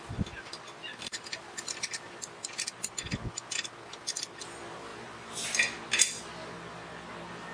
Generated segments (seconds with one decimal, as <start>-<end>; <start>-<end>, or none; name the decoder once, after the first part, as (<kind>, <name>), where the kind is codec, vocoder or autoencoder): 1.1-3.2 (vocoder, BigVGAN v2)